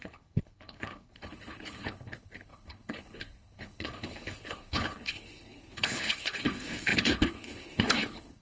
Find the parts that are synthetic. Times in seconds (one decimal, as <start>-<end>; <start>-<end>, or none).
0.0-8.4